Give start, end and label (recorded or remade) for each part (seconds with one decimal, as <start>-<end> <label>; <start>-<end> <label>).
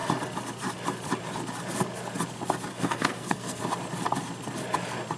0.0-2.7 recorded; 2.7-3.6 remade; 3.6-5.2 recorded